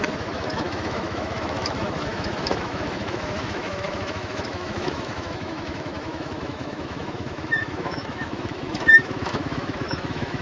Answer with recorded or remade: remade